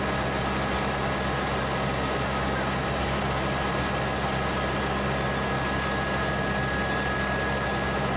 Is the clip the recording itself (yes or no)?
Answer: yes